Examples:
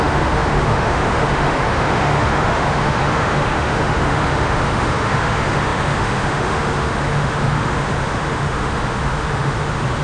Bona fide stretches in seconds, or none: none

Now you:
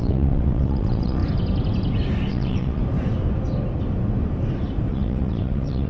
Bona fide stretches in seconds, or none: 1.2-2.3; 2.8-4.9

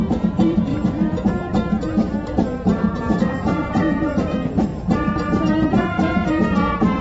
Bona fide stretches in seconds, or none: 0.7-3.2; 4.7-5.8